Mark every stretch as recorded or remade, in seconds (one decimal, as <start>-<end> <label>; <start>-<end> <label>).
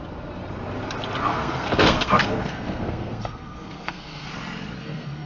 0.0-1.3 recorded; 1.3-4.3 remade; 4.3-4.8 recorded; 4.8-5.3 remade